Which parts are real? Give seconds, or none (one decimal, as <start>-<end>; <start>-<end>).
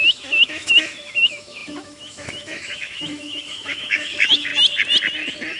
4.5-5.6